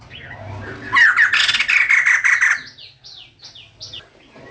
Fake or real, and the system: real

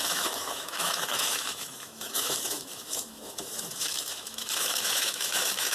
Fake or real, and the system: fake, autoencoder, DAC-VAE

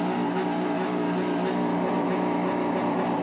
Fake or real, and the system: real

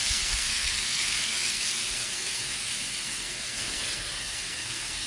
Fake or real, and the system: fake, codec, SNAC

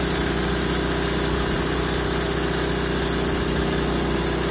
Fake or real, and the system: real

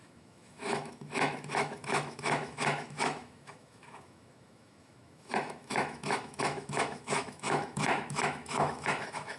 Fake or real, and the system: fake, autoencoder, DAC-VAE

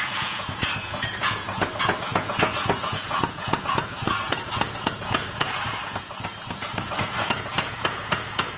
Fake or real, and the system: fake, vocoder, Vocos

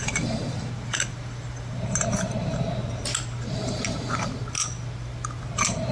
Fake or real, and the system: real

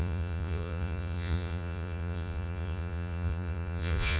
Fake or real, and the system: fake, vocoder, Vocos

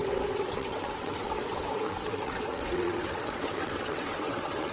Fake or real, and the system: fake, vocoder, WaveNeXt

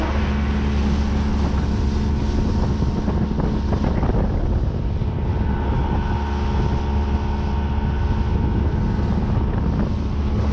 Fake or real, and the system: real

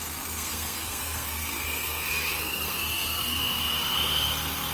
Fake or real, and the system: fake, codec, SNAC